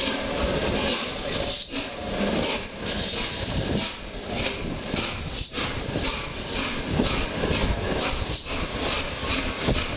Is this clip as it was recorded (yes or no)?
yes